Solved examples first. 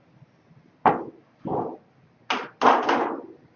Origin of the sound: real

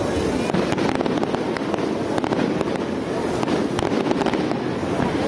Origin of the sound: real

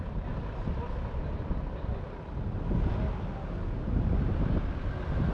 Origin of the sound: real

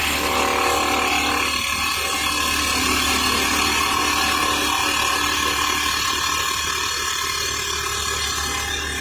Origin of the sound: real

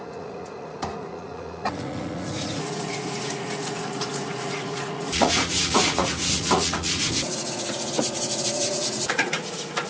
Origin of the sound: fake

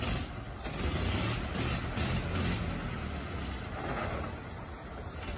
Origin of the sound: real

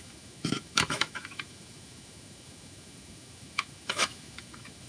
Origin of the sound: fake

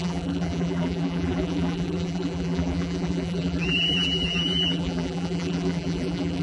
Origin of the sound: fake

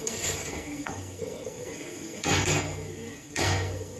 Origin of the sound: fake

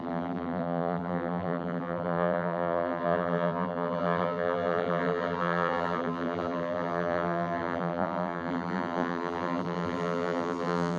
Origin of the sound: fake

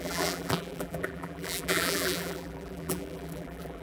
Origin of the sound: fake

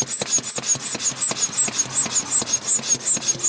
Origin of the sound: real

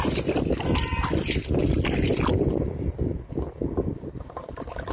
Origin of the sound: real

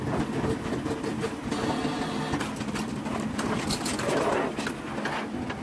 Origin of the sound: real